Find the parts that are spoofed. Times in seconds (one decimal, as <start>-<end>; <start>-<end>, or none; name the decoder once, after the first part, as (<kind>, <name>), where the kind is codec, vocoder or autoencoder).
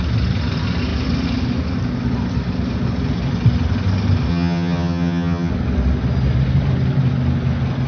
4.3-5.5 (vocoder, HiFi-GAN)